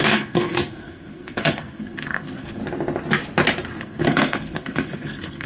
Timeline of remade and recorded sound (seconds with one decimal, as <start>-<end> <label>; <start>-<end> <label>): 0.0-2.6 remade; 2.6-3.8 recorded; 3.8-5.5 remade

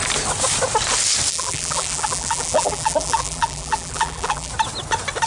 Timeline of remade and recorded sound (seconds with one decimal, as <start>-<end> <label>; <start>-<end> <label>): 0.0-1.3 recorded; 1.3-4.5 remade; 4.5-5.3 recorded

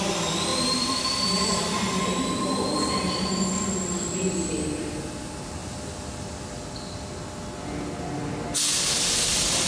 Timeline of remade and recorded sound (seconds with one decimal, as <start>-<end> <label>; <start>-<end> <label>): 0.0-0.5 recorded; 0.5-2.0 remade; 2.0-5.6 recorded; 5.6-6.6 remade; 6.6-9.7 recorded

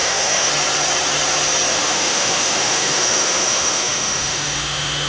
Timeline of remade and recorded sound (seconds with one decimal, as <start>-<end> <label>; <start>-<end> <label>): 0.0-0.5 remade; 0.5-1.7 recorded; 1.7-5.1 remade

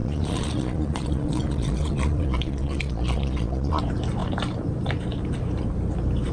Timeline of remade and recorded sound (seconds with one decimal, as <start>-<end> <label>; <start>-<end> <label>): 0.0-3.8 remade; 3.8-6.3 recorded